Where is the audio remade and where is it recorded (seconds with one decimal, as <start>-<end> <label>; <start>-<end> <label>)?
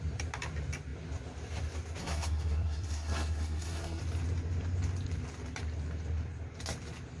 0.0-2.0 recorded; 2.0-4.0 remade; 4.0-7.2 recorded